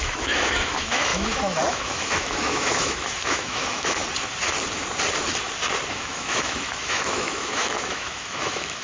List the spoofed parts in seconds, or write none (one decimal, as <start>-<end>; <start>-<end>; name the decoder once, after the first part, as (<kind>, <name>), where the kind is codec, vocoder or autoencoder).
0.0-4.0 (autoencoder, DAC-VAE); 5.9-8.8